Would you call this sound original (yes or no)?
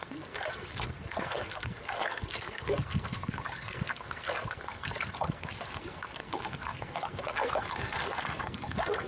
no